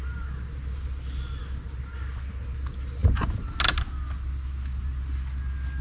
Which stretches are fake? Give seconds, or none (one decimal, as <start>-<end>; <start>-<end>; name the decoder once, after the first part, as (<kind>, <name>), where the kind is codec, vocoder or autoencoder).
none